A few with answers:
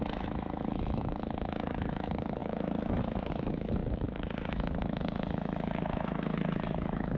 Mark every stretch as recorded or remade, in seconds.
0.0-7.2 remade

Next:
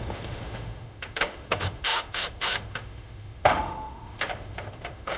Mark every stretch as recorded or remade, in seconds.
0.0-5.2 remade

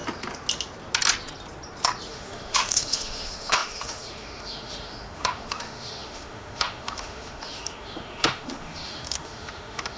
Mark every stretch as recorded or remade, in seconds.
0.0-2.1 recorded; 2.1-10.0 remade

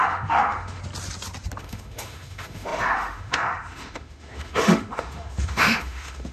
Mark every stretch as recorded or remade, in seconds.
0.0-0.8 remade; 0.8-1.6 recorded; 1.6-6.3 remade

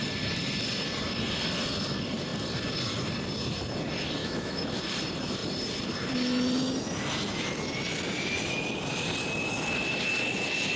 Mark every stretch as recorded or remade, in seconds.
0.0-4.2 recorded; 4.2-4.8 remade; 4.8-10.8 recorded

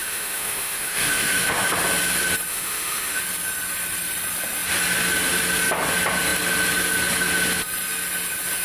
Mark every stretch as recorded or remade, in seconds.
0.0-1.7 remade; 1.7-2.5 recorded; 2.5-3.2 remade; 3.2-8.6 recorded

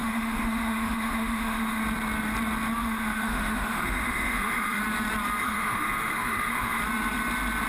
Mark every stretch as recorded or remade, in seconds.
0.0-1.8 remade; 1.8-2.8 recorded; 2.8-4.8 remade; 4.8-5.4 recorded; 5.4-6.8 remade; 6.8-7.7 recorded